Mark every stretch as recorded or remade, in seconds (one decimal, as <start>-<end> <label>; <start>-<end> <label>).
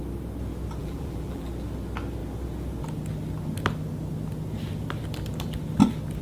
0.0-0.8 recorded; 0.8-1.5 remade; 1.5-6.2 recorded